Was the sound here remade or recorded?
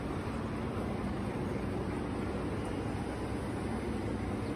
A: recorded